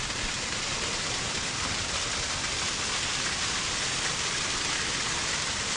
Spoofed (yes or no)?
no